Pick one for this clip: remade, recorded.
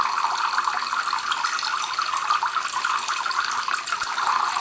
recorded